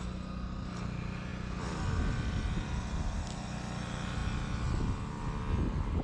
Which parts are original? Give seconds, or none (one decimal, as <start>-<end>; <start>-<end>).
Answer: 0.0-1.3; 2.4-6.0